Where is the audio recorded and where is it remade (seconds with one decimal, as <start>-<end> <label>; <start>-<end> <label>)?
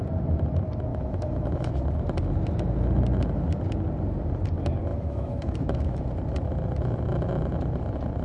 0.0-0.9 recorded; 0.9-1.7 remade; 1.7-4.9 recorded; 4.9-6.0 remade; 6.0-8.2 recorded